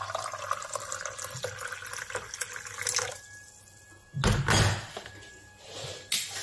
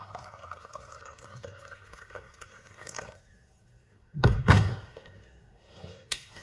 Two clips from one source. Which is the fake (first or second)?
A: second